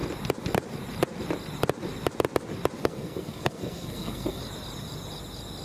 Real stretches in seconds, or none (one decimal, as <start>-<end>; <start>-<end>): 0.0-2.8; 4.4-5.6